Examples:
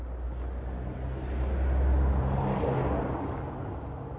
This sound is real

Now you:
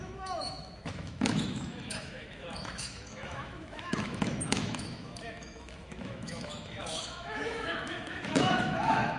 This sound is fake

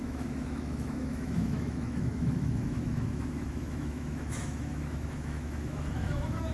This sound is fake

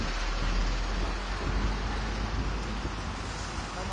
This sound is real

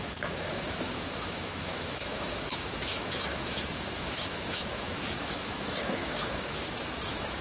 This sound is fake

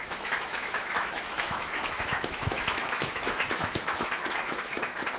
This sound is fake